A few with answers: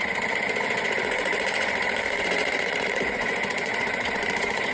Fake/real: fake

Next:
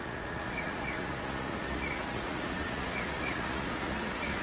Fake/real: fake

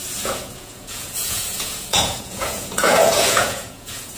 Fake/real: fake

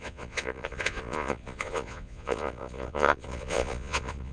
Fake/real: fake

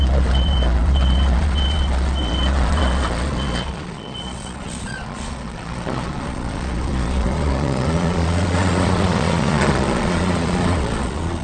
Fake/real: fake